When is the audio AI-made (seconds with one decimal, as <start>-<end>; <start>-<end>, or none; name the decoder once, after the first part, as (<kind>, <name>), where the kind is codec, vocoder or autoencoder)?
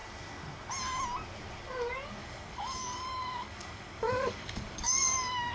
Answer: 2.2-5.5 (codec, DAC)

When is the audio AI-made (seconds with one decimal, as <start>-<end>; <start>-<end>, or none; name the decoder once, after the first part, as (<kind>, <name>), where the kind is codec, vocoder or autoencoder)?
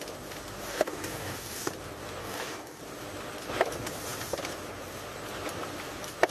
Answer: 0.7-1.7 (codec, DAC); 2.2-2.8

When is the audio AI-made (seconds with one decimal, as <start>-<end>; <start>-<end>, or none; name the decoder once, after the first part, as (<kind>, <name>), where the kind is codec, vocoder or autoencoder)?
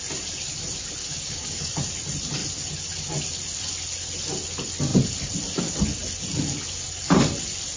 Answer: 1.0-1.7 (codec, DAC)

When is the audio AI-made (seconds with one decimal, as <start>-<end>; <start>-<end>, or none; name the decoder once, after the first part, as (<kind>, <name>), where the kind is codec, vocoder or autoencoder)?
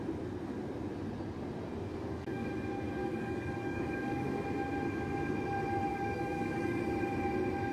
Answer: 1.9-2.5 (codec, DAC); 3.0-4.2; 5.9-6.8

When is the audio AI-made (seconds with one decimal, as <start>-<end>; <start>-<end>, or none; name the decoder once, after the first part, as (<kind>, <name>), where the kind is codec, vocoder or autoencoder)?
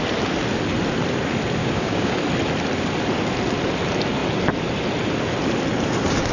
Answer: 1.6-2.2 (codec, DAC)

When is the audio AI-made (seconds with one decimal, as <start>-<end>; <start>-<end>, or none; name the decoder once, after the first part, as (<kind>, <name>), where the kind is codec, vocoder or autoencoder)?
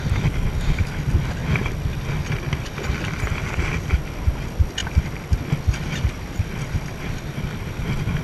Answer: none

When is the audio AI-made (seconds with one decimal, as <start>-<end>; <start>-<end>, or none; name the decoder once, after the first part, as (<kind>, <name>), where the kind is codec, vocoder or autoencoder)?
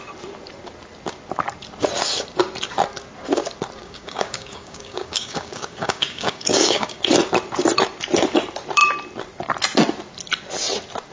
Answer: 3.8-7.0 (codec, DAC)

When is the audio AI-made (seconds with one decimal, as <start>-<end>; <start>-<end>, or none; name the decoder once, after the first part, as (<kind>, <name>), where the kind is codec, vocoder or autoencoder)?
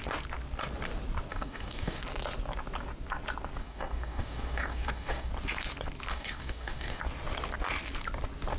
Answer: 1.3-2.0 (codec, DAC); 3.6-5.3; 6.1-7.0